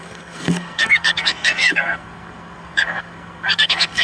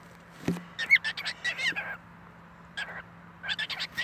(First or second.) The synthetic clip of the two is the first